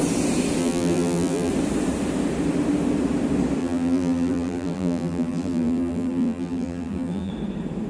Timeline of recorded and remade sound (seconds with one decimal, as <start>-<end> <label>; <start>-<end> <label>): 0.0-0.6 recorded; 0.6-1.5 remade; 1.5-3.6 recorded; 3.6-7.3 remade; 7.3-7.9 recorded